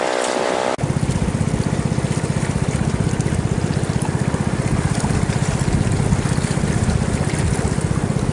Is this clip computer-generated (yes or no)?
no